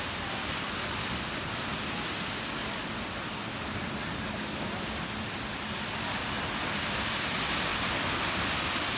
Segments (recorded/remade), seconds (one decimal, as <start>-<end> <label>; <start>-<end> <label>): 0.0-9.0 recorded